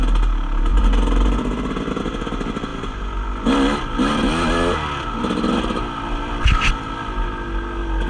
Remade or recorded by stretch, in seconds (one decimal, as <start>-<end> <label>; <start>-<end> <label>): 0.0-0.7 recorded; 0.7-1.4 remade; 1.4-8.1 recorded